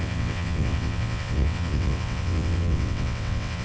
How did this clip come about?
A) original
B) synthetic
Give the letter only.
B